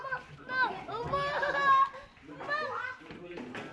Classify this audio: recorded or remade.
recorded